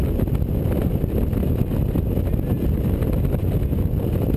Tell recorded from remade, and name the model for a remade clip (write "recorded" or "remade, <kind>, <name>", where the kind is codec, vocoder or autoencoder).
recorded